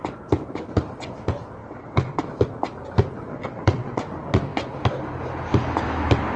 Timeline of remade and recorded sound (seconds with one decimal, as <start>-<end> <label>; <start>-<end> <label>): 0.0-1.6 recorded; 1.6-2.2 remade; 2.2-3.3 recorded; 3.3-4.0 remade; 4.0-6.4 recorded